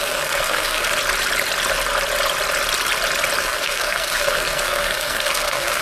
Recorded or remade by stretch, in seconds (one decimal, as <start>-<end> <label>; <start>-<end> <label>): 0.0-0.9 remade; 0.9-3.4 recorded; 3.4-5.8 remade